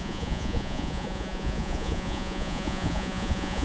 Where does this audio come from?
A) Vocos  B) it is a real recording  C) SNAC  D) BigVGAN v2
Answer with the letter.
A